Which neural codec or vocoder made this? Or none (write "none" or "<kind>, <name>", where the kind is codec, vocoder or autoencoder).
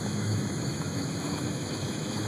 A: autoencoder, DAC-VAE